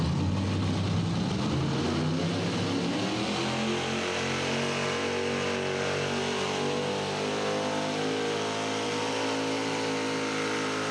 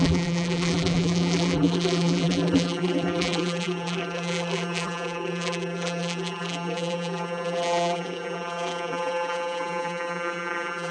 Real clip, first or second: first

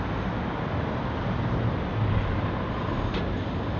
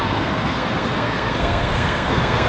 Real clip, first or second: first